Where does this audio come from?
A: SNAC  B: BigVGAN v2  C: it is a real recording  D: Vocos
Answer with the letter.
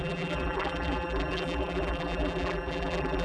B